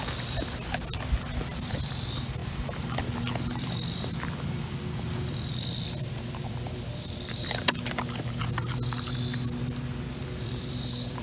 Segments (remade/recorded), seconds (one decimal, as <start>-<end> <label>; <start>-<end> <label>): 0.0-8.6 remade; 8.6-10.2 recorded; 10.2-11.2 remade